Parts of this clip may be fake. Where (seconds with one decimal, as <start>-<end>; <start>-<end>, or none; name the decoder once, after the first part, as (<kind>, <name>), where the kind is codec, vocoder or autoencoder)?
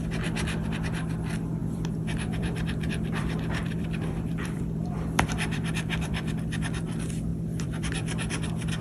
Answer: 1.6-6.3 (vocoder, BigVGAN v2); 7.3-8.3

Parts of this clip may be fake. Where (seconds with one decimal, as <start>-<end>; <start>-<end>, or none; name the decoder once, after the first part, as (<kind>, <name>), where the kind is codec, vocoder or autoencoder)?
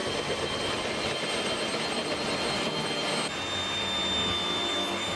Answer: none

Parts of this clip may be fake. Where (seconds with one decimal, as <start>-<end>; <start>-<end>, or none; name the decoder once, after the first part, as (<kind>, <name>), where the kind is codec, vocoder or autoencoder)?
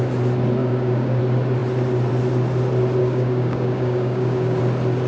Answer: 0.6-1.2 (codec, DAC); 3.0-4.6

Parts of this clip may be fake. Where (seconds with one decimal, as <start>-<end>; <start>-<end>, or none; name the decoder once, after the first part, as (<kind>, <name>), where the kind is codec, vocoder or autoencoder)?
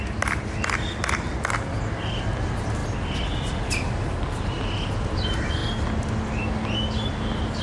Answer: none